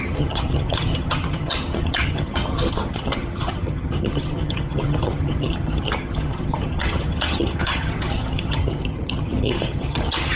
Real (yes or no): no